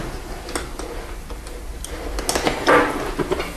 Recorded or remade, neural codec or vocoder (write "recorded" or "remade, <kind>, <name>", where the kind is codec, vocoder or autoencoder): recorded